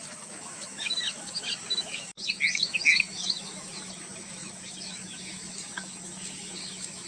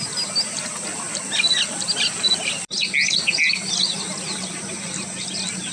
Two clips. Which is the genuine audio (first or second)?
second